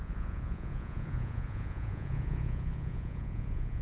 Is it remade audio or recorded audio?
remade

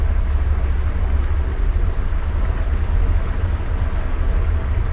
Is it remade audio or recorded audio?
recorded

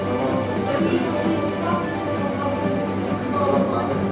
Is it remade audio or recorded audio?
recorded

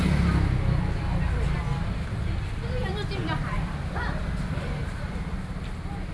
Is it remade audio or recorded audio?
recorded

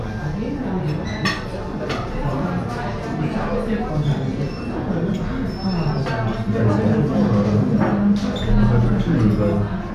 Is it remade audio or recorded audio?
recorded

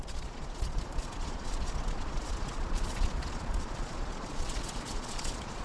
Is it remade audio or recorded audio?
remade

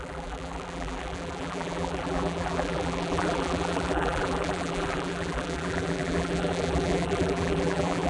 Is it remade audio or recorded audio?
remade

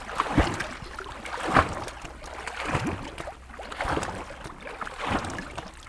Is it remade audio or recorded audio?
recorded